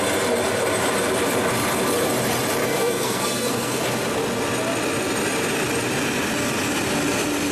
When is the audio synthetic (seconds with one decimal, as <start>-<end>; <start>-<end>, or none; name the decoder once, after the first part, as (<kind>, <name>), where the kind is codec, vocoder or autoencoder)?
2.6-3.8 (codec, SNAC)